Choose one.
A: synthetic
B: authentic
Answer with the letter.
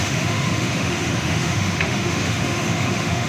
A